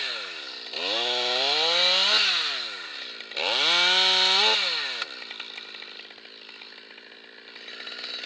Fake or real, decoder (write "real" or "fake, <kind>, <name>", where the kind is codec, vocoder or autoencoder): real